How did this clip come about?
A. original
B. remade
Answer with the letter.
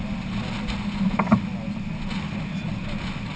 A